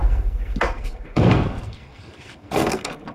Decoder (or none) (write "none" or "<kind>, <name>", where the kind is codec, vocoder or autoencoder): codec, SNAC